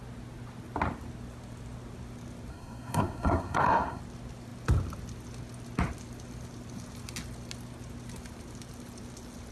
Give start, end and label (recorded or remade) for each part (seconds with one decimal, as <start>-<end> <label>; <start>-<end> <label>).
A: 0.0-2.5 recorded; 2.5-4.0 remade; 4.0-9.5 recorded